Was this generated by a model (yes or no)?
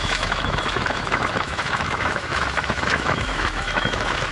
yes